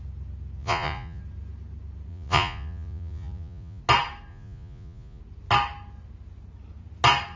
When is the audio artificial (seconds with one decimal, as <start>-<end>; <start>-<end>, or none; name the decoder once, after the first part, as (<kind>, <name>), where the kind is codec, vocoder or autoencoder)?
0.6-1.2 (vocoder, Vocos); 2.1-3.8; 4.3-5.2